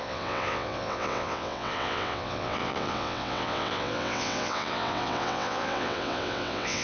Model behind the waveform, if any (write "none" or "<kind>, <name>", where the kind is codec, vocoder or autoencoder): vocoder, WaveNeXt